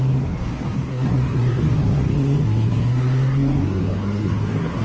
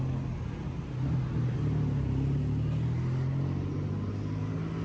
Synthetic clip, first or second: first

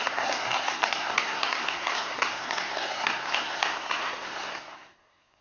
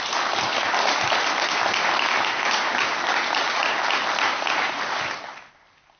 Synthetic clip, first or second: first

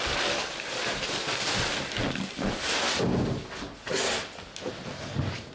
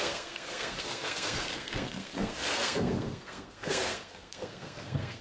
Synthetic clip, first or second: second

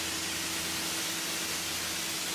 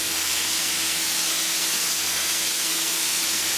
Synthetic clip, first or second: second